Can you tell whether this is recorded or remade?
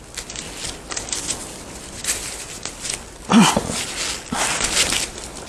recorded